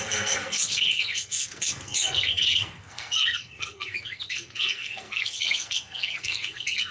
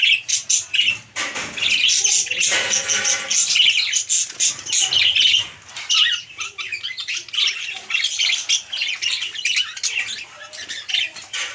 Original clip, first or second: second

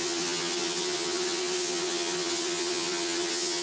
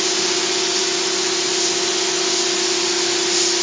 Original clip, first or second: second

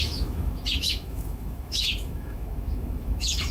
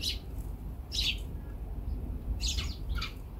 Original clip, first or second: second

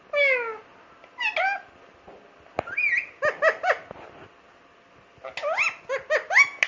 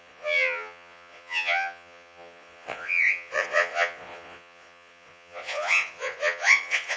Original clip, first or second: first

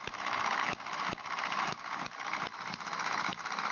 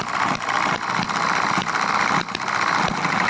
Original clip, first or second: second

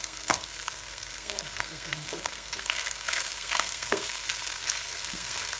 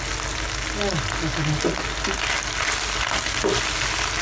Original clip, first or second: second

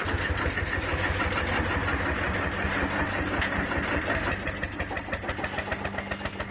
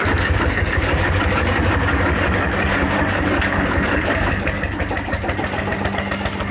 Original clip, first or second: first